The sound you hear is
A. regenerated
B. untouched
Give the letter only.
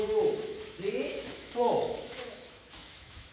A